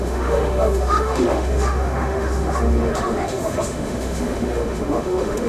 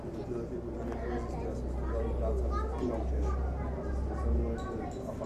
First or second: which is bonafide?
second